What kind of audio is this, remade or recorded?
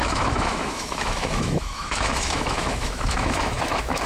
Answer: remade